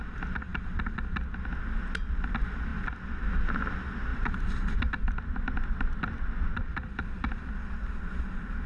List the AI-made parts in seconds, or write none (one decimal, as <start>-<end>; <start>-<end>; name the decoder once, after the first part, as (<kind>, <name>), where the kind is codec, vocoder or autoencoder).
4.1-7.5 (vocoder, BigVGAN v2)